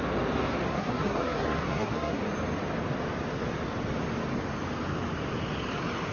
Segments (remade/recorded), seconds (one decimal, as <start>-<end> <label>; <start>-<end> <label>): 0.0-0.7 recorded; 0.7-2.2 remade; 2.2-6.1 recorded